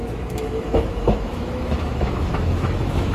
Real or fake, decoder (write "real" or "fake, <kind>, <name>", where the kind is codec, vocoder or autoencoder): fake, autoencoder, DAC-VAE